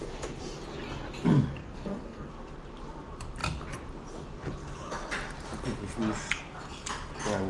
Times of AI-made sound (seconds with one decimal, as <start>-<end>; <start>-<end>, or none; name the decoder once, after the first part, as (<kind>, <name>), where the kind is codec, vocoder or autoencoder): 1.6-2.3 (codec, SNAC)